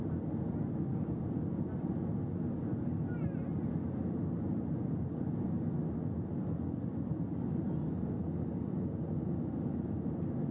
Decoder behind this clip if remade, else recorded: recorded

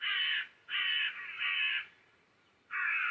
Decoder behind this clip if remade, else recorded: recorded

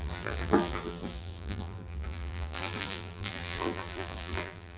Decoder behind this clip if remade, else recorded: remade, vocoder, BigVGAN v2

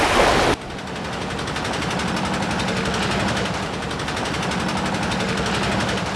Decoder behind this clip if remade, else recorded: recorded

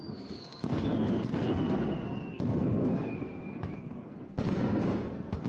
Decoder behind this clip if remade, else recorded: remade, codec, SNAC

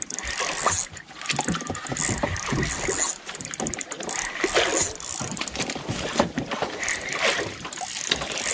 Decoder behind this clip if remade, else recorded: recorded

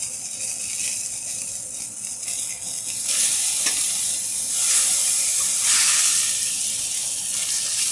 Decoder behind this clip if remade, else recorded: recorded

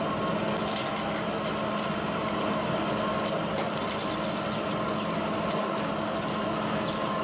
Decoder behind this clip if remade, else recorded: recorded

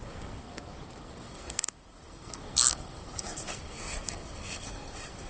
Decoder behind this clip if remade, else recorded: remade, codec, SNAC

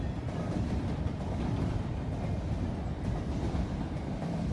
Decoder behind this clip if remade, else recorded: remade, vocoder, BigVGAN v2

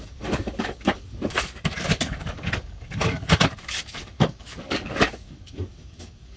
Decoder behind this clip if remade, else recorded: remade, codec, DAC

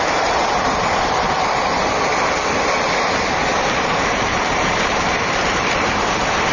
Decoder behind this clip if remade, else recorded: remade, vocoder, BigVGAN v2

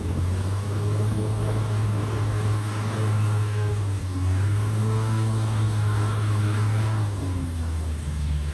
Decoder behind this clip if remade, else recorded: remade, codec, DAC